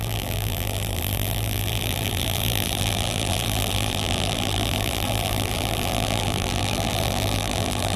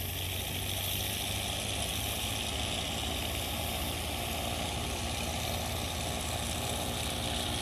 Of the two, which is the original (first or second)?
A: second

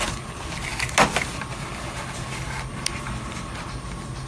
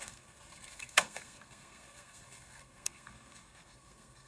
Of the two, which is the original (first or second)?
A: first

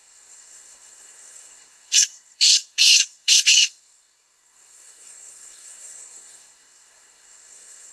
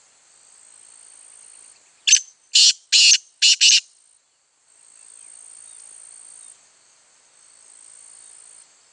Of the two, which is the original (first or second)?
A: second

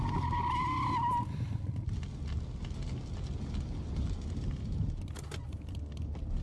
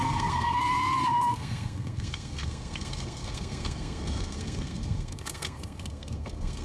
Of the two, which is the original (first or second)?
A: first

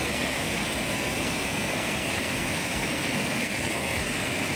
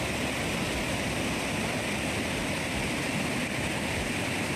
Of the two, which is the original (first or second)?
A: second